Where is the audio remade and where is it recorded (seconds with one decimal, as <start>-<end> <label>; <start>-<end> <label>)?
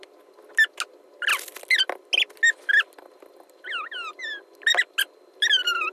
0.0-5.9 recorded